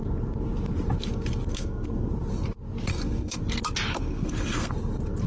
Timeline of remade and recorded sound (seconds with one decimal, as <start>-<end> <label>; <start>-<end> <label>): 0.0-1.5 recorded; 1.5-2.1 remade; 2.1-2.9 recorded; 2.9-3.4 remade; 3.4-3.9 recorded; 3.9-4.7 remade; 4.7-5.3 recorded